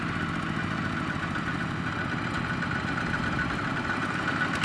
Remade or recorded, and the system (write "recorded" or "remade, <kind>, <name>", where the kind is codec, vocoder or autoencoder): recorded